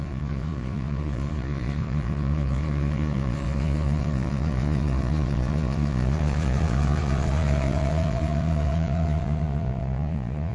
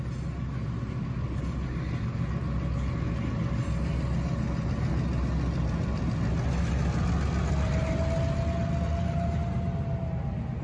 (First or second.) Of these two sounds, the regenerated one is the first